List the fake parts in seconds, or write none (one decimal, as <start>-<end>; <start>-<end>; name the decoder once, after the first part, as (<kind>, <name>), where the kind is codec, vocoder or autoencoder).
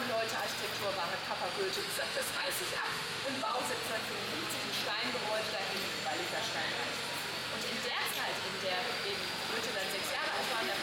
1.8-3.6 (autoencoder, DAC-VAE)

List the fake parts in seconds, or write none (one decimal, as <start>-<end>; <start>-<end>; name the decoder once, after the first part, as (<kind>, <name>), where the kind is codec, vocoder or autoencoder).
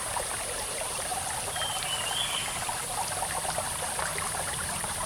0.0-1.1 (vocoder, BigVGAN v2); 4.2-5.1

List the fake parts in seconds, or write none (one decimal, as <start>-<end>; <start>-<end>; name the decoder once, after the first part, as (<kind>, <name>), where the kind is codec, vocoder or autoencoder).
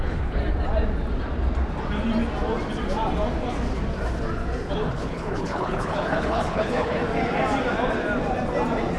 0.0-0.4 (codec, HILCodec); 4.9-7.0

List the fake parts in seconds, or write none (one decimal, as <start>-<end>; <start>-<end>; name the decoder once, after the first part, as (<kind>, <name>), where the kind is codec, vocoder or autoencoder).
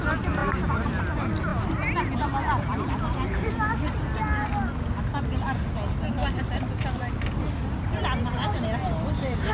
none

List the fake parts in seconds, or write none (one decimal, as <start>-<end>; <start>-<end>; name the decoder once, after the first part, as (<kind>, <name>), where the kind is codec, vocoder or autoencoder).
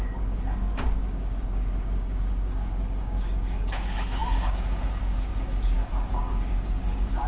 0.0-7.3 (codec, DAC)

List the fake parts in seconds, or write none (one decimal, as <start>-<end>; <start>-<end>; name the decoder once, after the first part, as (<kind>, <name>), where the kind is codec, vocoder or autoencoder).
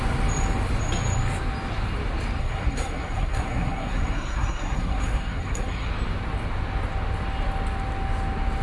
2.4-5.9 (codec, SNAC)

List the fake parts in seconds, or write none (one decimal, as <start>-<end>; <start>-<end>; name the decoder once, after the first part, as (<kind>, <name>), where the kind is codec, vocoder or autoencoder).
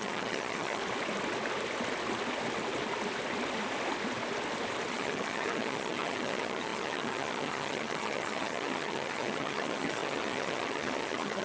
0.0-0.8 (vocoder, HiFi-GAN); 4.9-11.4